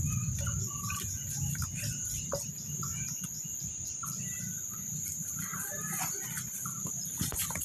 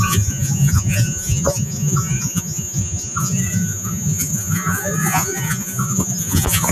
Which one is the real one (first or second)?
first